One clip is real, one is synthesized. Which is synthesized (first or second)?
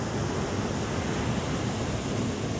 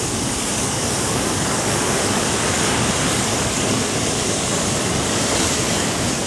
second